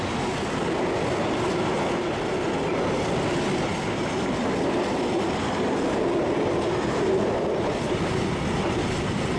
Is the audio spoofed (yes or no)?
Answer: no